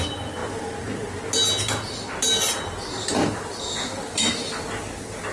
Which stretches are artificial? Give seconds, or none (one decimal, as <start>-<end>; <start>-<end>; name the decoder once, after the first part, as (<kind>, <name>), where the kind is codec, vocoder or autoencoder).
none